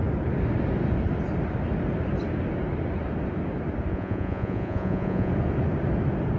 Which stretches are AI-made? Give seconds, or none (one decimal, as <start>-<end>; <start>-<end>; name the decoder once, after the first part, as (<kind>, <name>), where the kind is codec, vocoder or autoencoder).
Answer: 3.9-5.3 (vocoder, Vocos)